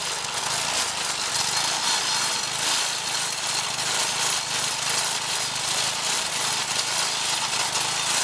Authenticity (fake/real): real